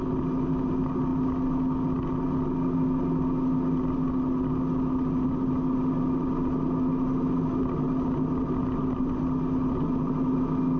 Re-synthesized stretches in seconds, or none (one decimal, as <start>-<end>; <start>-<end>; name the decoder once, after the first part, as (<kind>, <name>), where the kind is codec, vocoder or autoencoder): none